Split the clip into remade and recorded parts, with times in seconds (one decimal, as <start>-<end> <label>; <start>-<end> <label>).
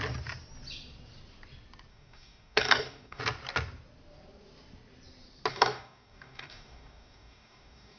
0.0-1.9 recorded; 1.9-3.2 remade; 3.2-5.5 recorded; 5.5-8.0 remade